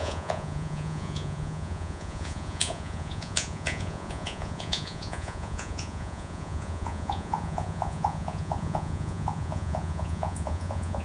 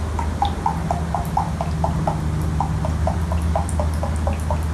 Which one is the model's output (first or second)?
first